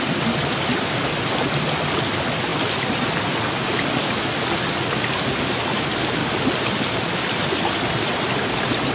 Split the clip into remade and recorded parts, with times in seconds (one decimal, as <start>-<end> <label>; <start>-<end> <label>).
0.0-2.5 recorded; 2.5-3.1 remade; 3.1-6.2 recorded; 6.2-8.5 remade; 8.5-8.9 recorded